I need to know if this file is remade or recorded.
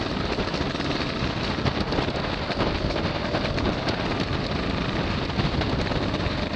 recorded